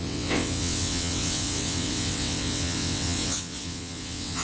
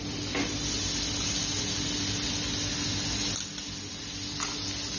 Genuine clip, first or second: second